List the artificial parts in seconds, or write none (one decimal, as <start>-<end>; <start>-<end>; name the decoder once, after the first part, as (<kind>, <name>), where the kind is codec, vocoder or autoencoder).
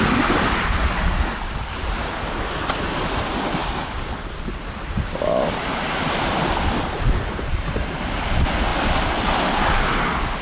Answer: 3.6-5.5 (vocoder, BigVGAN v2); 8.7-9.8